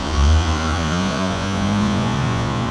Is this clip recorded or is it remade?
remade